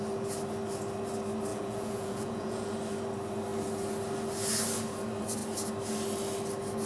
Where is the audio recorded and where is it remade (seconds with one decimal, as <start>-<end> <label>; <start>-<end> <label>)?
0.0-1.5 recorded; 1.5-2.7 remade; 2.7-6.9 recorded